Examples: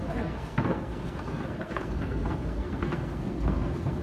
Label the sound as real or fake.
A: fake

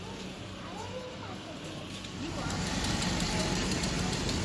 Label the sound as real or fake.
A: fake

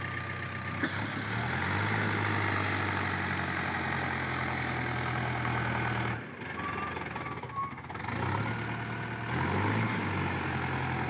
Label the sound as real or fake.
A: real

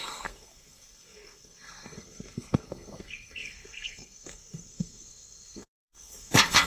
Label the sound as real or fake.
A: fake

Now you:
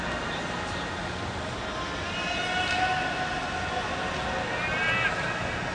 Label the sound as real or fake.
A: real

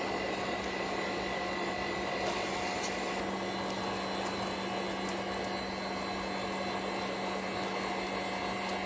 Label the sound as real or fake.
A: real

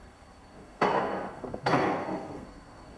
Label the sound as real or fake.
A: fake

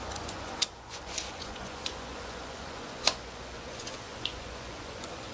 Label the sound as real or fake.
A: fake